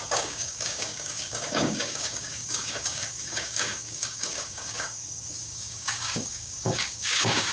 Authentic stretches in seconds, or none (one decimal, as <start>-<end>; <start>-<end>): none